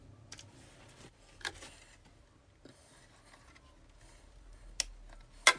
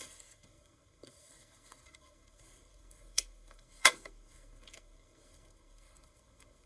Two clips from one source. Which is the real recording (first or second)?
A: first